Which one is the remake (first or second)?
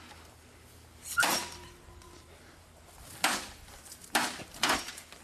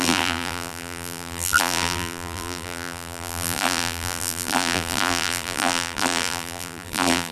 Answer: second